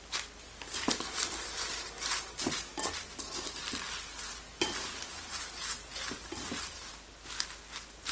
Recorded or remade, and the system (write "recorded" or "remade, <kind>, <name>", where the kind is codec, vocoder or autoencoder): recorded